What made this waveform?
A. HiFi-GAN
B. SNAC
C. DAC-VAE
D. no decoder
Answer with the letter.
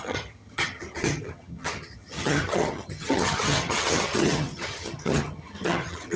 A